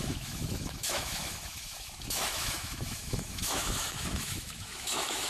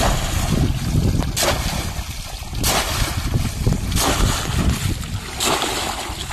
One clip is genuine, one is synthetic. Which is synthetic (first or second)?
first